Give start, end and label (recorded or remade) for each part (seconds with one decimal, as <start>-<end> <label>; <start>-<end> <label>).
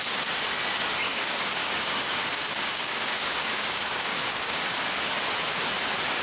0.0-1.1 recorded; 1.1-4.8 remade; 4.8-6.2 recorded